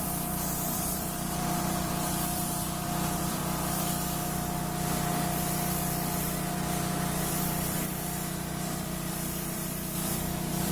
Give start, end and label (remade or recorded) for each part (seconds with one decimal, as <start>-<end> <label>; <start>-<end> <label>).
0.0-3.4 remade; 3.4-7.3 recorded; 7.3-10.7 remade